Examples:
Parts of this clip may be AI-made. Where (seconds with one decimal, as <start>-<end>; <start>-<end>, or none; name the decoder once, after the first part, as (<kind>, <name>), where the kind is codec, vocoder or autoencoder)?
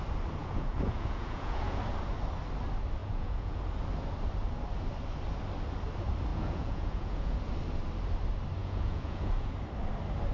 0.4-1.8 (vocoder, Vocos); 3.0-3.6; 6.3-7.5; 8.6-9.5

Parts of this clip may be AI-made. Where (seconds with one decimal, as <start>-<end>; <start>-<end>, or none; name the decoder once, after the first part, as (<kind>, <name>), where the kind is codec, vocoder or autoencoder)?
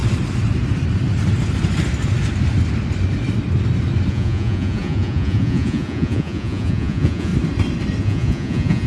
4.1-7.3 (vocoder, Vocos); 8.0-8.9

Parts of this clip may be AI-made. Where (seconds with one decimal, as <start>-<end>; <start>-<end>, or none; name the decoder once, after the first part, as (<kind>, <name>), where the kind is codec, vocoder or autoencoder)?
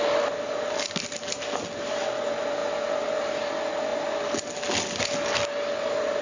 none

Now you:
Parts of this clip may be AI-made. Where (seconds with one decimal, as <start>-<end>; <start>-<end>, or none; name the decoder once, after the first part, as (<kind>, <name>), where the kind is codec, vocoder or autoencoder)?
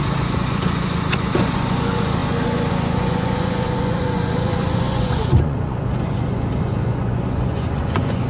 0.0-8.3 (vocoder, Vocos)